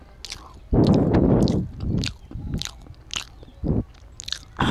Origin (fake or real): real